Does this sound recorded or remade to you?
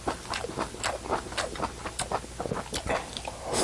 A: recorded